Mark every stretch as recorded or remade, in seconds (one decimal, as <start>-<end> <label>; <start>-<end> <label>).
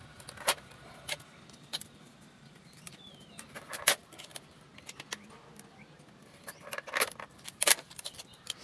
0.0-8.6 recorded